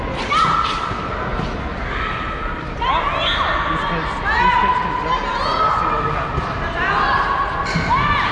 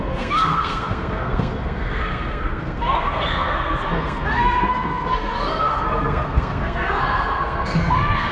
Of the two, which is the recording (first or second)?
first